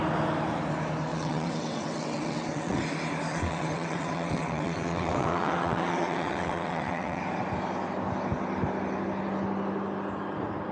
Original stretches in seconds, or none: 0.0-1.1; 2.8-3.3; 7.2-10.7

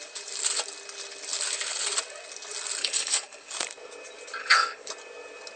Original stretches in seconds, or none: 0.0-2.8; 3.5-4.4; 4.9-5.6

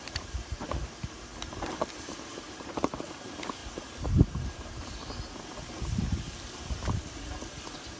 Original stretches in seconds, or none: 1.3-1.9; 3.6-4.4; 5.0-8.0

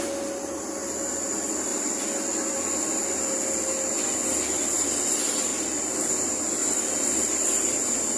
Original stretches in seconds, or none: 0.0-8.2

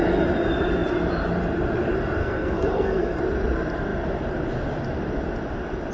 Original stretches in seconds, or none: 0.0-2.2; 3.2-5.9

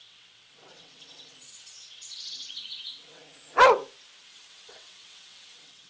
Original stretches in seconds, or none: 3.2-4.2

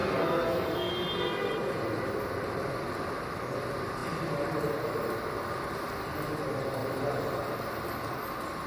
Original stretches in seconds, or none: 0.9-8.7